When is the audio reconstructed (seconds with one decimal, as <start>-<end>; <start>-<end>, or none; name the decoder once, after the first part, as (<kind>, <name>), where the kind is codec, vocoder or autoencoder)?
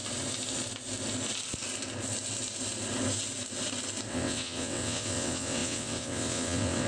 4.1-6.9 (vocoder, WaveNeXt)